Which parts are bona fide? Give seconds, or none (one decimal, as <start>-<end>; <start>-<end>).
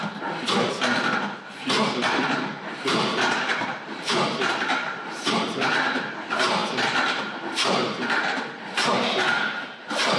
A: 0.0-3.5; 5.2-6.6; 7.2-10.2